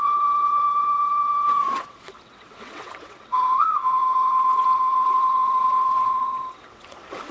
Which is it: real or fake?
fake